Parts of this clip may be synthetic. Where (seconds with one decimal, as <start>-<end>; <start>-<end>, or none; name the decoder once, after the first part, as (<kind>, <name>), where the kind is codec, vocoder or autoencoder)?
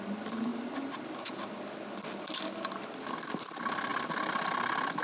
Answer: none